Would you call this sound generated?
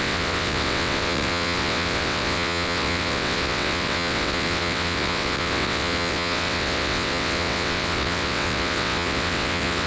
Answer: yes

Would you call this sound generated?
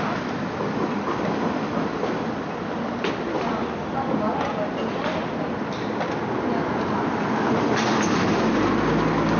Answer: no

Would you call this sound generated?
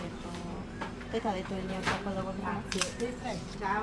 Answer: yes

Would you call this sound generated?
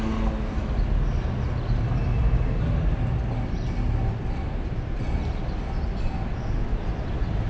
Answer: no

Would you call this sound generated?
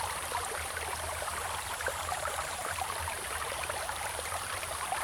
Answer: yes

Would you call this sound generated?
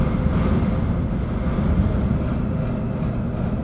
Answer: no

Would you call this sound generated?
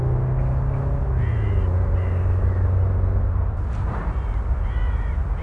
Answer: no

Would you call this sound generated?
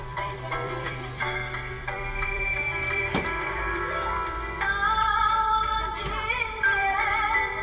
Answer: yes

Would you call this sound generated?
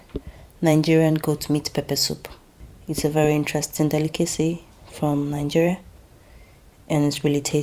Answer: yes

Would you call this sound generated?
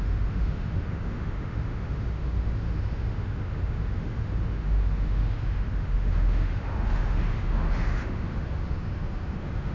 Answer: yes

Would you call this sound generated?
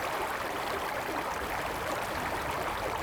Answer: no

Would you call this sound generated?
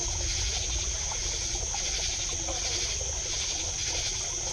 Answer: no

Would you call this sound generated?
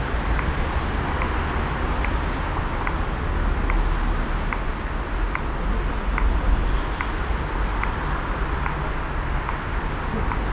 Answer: no